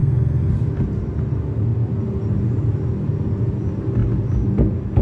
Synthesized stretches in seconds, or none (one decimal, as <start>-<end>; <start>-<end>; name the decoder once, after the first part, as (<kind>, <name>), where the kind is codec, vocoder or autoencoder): 0.0-0.5 (codec, SNAC)